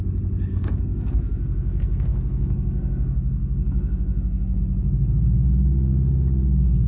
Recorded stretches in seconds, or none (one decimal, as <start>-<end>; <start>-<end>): 0.0-0.5; 4.6-6.9